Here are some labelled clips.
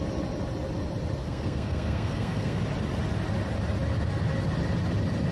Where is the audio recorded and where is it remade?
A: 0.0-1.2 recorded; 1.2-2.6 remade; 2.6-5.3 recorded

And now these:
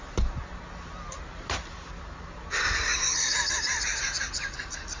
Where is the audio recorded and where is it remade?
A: 0.0-5.0 recorded

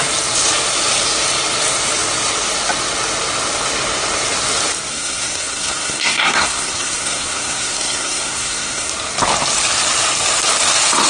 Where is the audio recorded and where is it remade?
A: 0.0-4.9 recorded; 4.9-8.9 remade; 8.9-11.1 recorded

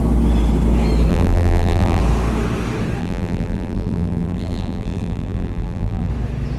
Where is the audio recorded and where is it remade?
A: 0.0-1.1 recorded; 1.1-2.0 remade; 2.0-3.0 recorded; 3.0-6.1 remade; 6.1-6.6 recorded

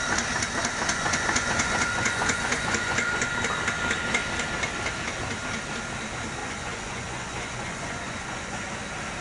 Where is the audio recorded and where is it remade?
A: 0.0-0.9 recorded; 0.9-3.3 remade; 3.3-6.4 recorded; 6.4-8.7 remade; 8.7-9.2 recorded

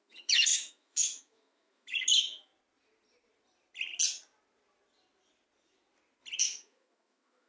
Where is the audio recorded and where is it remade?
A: 0.0-2.5 remade; 2.5-6.4 recorded; 6.4-7.5 remade

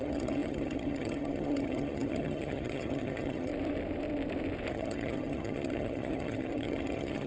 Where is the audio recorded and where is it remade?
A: 0.0-3.5 remade; 3.5-4.7 recorded; 4.7-7.3 remade

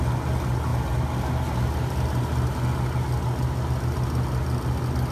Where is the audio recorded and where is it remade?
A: 0.0-5.1 recorded